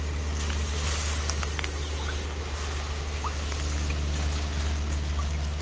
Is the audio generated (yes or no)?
no